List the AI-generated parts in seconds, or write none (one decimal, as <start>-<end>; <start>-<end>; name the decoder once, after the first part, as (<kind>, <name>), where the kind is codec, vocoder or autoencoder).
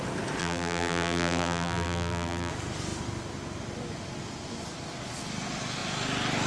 0.4-2.5 (vocoder, BigVGAN v2)